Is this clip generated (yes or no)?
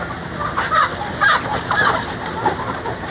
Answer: no